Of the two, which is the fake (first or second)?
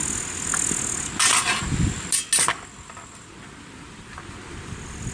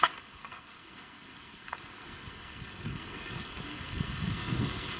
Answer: second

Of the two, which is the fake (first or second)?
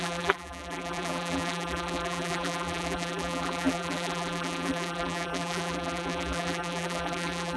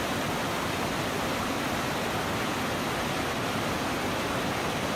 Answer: first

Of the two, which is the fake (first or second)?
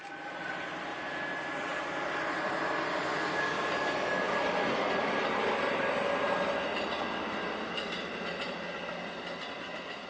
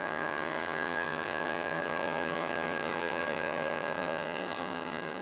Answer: second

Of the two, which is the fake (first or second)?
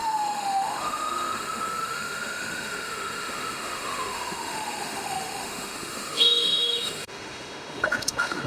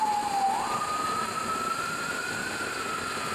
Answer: first